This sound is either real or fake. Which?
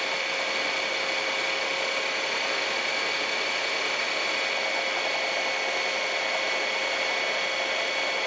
real